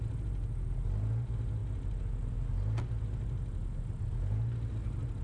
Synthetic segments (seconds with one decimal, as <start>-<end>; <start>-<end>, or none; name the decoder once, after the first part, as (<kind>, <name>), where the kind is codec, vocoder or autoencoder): none